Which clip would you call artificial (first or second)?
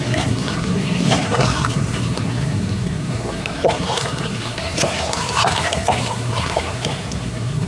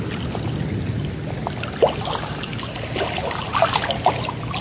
first